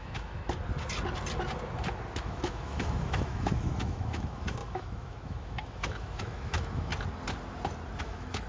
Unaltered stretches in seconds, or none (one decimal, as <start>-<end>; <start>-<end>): 0.4-2.2; 6.9-8.0